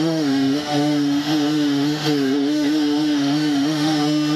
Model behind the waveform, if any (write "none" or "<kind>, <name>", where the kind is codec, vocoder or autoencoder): autoencoder, DAC-VAE